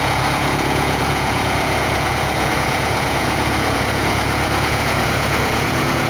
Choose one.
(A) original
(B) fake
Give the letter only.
B